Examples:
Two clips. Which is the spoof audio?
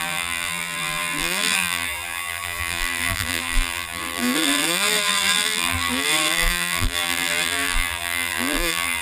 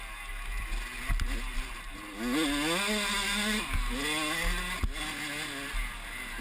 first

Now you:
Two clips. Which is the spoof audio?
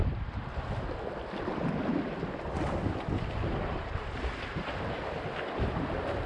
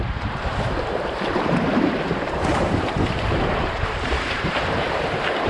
second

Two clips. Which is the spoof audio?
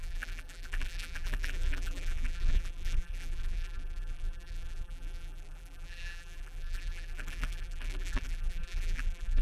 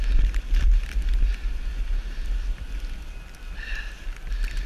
first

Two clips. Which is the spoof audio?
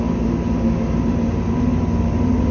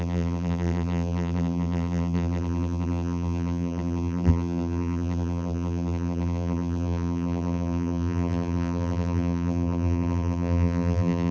second